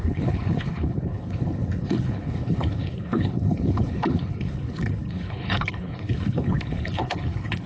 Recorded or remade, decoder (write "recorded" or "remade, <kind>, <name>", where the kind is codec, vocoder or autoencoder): remade, codec, HILCodec